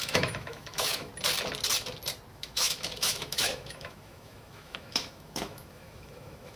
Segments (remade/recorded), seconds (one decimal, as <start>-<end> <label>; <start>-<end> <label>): 0.0-1.1 remade; 1.1-2.3 recorded; 2.3-6.6 remade